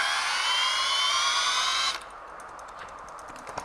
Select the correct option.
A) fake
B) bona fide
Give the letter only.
B